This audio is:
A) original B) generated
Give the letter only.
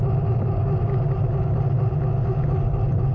A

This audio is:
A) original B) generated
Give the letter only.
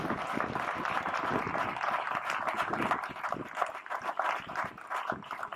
A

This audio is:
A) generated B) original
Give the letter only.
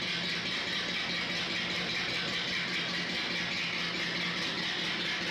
B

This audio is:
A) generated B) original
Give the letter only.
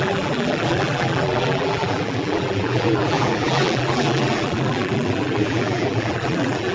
A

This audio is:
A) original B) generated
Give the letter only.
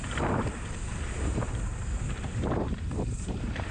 B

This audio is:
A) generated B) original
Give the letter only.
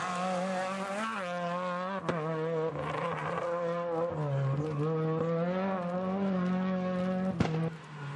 B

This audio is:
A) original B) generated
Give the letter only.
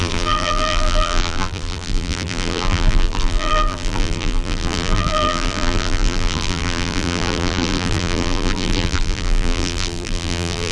B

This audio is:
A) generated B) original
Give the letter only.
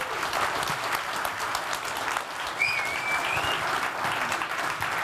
B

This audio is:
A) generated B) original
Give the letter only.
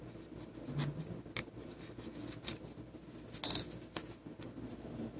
B